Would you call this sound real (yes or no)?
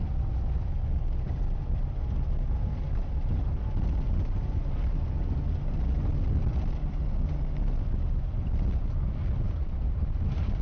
yes